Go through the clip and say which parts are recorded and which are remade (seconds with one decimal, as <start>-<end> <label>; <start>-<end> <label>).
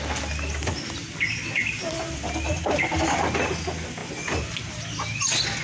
0.0-5.6 recorded